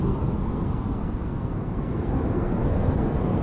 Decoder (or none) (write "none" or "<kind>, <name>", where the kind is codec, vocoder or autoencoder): codec, SNAC